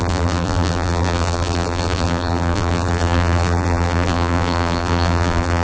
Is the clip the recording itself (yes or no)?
no